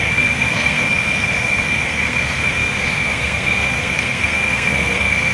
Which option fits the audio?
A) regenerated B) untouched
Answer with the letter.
A